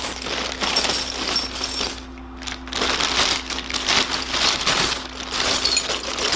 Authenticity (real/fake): real